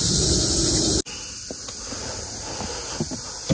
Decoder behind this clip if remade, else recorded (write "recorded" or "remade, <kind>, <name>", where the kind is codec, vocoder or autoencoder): recorded